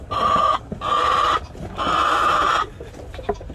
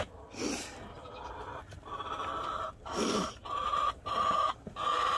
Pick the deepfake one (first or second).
second